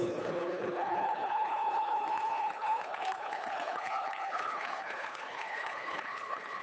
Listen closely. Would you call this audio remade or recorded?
remade